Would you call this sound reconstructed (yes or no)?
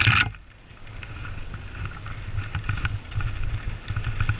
no